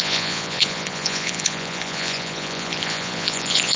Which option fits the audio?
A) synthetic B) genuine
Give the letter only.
A